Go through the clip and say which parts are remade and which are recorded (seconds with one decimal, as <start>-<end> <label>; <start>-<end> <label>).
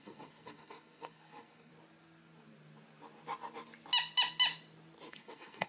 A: 0.0-1.7 remade; 1.7-5.1 recorded; 5.1-5.7 remade